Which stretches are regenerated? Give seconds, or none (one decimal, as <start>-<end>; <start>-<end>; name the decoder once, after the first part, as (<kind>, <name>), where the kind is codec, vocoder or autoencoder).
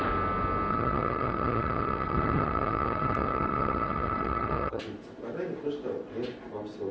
0.7-4.8 (vocoder, HiFi-GAN)